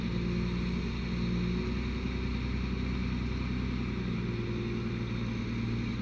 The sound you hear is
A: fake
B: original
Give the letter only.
B